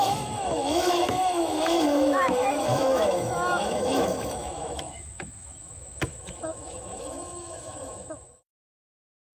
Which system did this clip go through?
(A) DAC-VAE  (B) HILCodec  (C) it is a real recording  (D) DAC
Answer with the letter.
A